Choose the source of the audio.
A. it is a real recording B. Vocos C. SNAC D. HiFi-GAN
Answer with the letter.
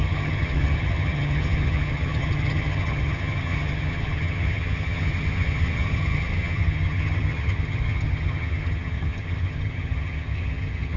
D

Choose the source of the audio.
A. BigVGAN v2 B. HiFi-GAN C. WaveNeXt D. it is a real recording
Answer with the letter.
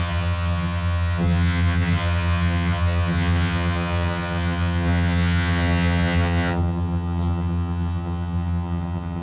B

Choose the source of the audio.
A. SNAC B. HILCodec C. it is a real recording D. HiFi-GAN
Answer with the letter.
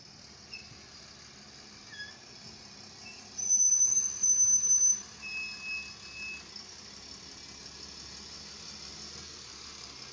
C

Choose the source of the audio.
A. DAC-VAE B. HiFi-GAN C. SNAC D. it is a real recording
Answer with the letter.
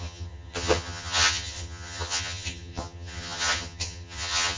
B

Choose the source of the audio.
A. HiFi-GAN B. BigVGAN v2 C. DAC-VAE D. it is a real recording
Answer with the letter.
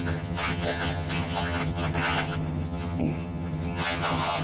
A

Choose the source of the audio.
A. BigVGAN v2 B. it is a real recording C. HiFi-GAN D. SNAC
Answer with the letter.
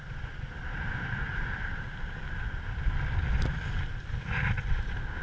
B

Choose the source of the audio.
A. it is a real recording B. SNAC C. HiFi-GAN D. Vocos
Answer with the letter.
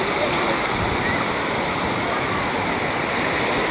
A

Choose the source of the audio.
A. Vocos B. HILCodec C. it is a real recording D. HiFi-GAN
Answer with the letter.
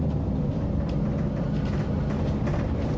C